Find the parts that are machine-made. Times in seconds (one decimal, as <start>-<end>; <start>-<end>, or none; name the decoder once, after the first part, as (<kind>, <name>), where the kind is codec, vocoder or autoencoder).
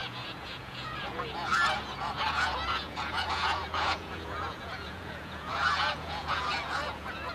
0.0-7.3 (vocoder, Vocos)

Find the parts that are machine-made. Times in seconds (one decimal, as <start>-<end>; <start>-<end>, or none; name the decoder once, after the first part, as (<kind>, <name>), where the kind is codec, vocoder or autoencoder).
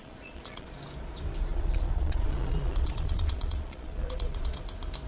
0.0-0.8 (vocoder, Vocos); 1.5-4.6